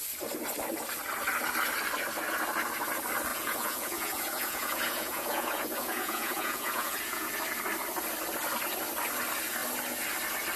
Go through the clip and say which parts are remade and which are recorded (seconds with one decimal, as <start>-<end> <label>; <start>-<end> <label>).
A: 0.0-3.3 recorded; 3.3-7.3 remade; 7.3-10.6 recorded